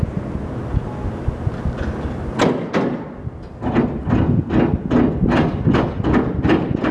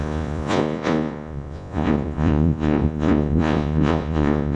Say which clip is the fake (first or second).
second